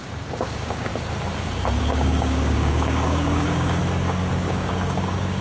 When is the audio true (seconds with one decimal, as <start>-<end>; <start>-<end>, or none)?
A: 0.9-1.8; 3.8-4.3